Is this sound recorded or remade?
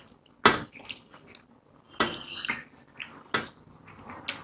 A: recorded